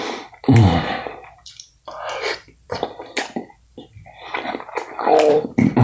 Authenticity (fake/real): fake